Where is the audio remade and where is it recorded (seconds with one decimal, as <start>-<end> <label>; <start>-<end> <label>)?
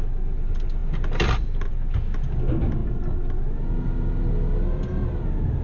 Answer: 0.0-5.6 recorded